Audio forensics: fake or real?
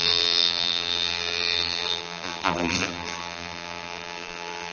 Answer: fake